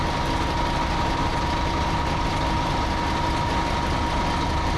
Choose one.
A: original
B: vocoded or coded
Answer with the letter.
A